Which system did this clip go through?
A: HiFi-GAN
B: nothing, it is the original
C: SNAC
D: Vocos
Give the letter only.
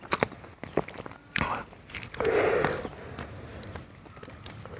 B